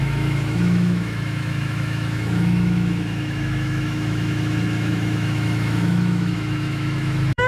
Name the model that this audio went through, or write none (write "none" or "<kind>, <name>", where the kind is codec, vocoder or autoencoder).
autoencoder, DAC-VAE